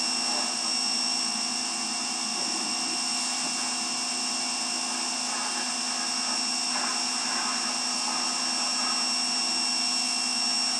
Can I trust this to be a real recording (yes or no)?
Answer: yes